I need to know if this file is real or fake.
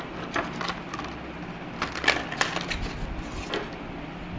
real